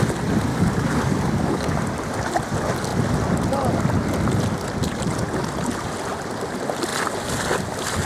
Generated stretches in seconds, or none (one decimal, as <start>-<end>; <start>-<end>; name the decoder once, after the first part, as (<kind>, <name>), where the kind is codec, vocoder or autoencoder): 0.5-1.7 (codec, DAC)